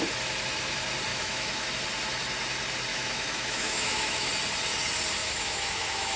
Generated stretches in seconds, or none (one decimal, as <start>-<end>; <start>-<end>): 1.1-1.7; 2.9-4.3; 5.2-6.2